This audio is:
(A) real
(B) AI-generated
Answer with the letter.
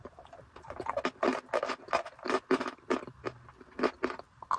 A